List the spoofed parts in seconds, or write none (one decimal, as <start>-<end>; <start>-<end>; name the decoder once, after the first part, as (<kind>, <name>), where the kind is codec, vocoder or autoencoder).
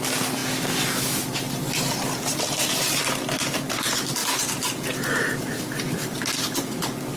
none